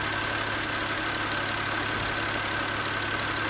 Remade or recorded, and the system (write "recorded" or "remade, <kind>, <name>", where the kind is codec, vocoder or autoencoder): recorded